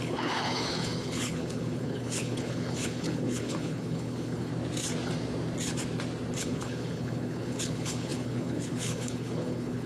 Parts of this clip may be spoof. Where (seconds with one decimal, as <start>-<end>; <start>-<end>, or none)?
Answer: 0.0-4.5; 6.4-9.9